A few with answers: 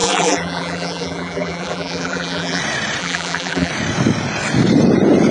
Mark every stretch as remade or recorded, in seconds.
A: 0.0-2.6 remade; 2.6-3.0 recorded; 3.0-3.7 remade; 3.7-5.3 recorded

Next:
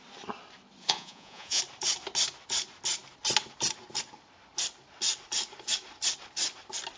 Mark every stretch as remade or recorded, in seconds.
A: 0.0-0.8 recorded; 0.8-1.6 remade; 1.6-7.0 recorded

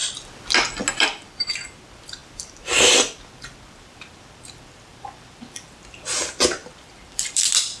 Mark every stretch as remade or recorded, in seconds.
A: 0.0-1.0 recorded; 1.0-7.8 remade

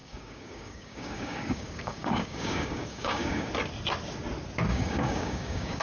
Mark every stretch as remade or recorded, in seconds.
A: 0.0-3.5 remade; 3.5-4.7 recorded; 4.7-5.8 remade

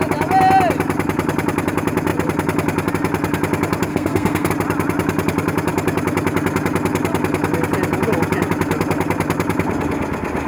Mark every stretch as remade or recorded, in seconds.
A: 0.0-3.9 recorded; 3.9-4.5 remade; 4.5-10.5 recorded

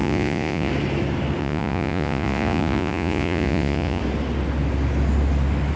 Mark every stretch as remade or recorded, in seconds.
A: 0.0-0.7 remade; 0.7-1.4 recorded; 1.4-4.0 remade; 4.0-5.8 recorded

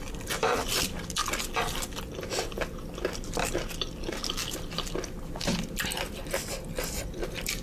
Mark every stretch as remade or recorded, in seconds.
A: 0.0-7.6 recorded

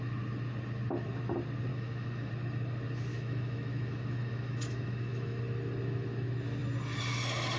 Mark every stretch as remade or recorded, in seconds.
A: 0.0-1.7 recorded; 1.7-2.3 remade; 2.3-3.1 recorded; 3.1-5.4 remade; 5.4-7.6 recorded